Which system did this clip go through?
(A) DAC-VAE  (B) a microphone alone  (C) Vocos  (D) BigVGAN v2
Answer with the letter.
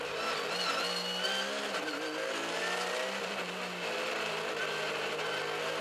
B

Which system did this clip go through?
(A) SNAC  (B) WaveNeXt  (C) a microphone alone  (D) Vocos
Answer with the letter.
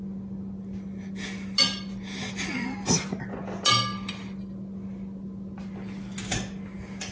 C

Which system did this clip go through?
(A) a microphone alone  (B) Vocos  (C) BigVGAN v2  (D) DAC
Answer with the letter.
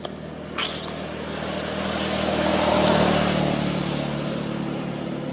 A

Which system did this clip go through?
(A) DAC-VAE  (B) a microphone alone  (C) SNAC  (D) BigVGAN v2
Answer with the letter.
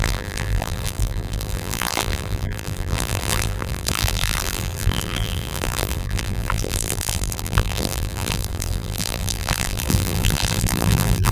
D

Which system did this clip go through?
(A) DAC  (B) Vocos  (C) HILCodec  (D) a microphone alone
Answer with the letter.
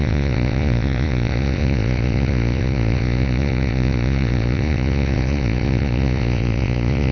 B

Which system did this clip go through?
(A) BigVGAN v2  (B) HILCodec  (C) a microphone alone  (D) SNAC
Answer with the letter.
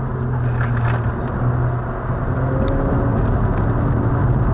C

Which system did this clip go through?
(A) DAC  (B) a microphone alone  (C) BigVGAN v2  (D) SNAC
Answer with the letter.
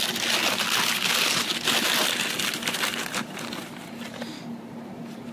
B